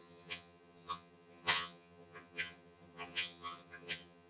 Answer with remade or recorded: remade